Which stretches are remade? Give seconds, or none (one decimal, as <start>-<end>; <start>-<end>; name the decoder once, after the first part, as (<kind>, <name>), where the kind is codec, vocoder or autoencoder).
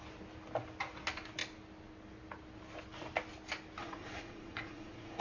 3.8-5.2 (vocoder, Vocos)